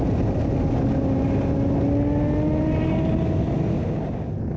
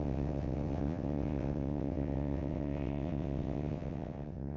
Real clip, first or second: first